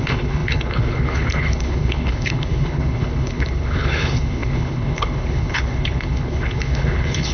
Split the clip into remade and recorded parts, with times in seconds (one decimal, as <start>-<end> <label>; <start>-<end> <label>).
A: 0.0-7.3 remade

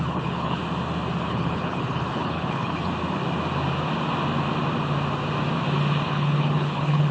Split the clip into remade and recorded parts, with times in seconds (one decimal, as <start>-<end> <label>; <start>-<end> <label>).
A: 0.0-0.6 remade; 0.6-1.2 recorded; 1.2-2.9 remade; 2.9-6.1 recorded; 6.1-7.1 remade